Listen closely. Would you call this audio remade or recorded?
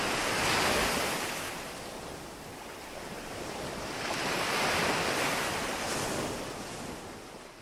recorded